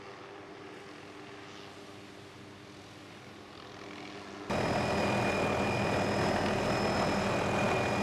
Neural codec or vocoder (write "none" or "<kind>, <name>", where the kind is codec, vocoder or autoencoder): none